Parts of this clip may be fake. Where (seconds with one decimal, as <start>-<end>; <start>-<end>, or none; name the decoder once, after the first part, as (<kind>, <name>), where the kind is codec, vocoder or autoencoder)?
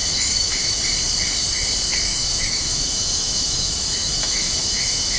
0.0-0.8 (autoencoder, DAC-VAE); 2.1-5.2